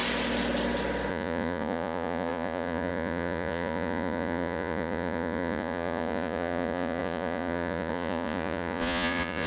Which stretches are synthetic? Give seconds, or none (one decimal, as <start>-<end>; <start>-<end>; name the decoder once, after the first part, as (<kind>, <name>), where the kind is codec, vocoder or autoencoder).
1.1-9.5 (vocoder, Vocos)